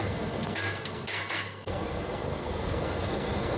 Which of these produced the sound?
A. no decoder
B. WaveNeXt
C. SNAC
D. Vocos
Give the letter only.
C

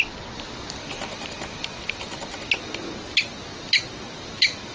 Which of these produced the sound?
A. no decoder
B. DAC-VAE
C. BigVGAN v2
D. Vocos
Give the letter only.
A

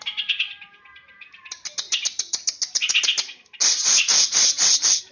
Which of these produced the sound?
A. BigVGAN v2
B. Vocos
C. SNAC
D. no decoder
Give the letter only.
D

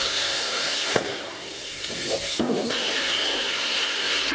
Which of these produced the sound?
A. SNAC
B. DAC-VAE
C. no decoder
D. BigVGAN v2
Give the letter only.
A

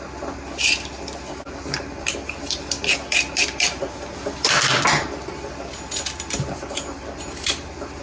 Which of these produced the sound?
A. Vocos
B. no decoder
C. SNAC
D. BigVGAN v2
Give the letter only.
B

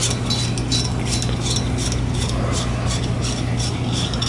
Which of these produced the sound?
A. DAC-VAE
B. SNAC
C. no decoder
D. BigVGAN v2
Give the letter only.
C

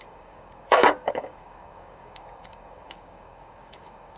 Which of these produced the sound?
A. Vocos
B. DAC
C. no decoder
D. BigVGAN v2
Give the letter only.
B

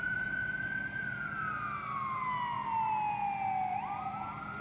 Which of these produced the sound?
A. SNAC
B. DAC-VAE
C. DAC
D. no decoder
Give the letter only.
D